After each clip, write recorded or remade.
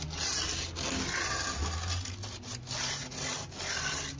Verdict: recorded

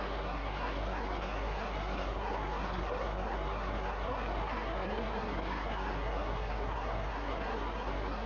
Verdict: remade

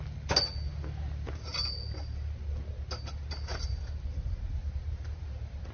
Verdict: recorded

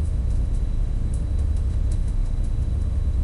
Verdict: remade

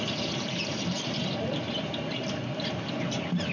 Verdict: remade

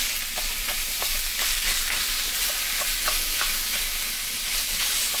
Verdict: recorded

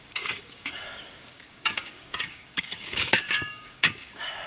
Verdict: remade